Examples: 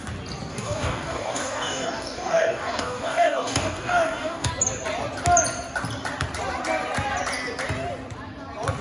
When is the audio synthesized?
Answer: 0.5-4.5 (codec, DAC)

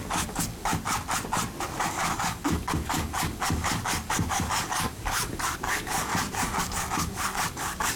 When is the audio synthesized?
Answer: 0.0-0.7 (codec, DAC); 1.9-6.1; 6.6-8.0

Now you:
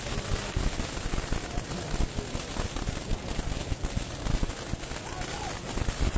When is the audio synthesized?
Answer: none